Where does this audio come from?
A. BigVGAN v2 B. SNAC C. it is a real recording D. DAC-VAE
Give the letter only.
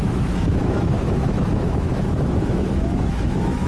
D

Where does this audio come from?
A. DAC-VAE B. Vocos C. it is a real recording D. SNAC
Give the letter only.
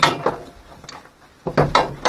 C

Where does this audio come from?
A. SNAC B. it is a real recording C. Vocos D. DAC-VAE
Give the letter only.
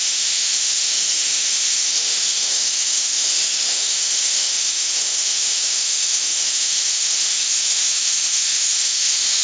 D